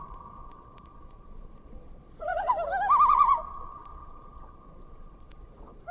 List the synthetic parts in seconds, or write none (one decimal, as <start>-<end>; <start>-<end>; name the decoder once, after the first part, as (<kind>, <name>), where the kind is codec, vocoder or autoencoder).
0.0-2.5 (vocoder, Vocos); 3.1-5.9